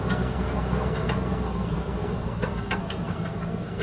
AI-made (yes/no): yes